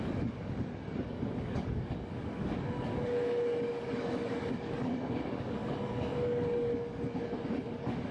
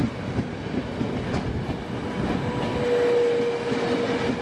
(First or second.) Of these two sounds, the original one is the second